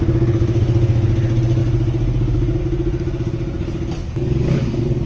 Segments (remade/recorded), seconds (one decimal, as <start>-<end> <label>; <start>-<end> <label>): 0.0-4.0 recorded; 4.0-5.1 remade